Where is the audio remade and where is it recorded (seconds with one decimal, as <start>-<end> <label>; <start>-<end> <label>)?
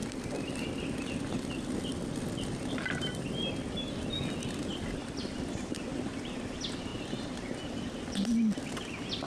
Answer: 0.0-9.3 recorded